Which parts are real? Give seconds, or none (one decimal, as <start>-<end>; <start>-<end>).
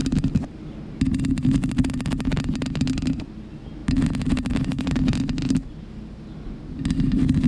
0.0-3.8; 5.0-5.4; 6.2-7.5